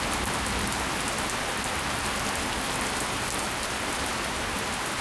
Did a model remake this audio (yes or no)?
no